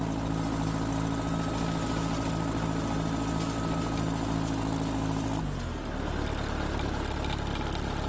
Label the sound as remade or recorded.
recorded